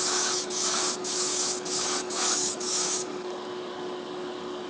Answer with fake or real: fake